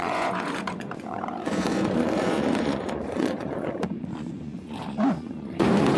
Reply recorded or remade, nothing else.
remade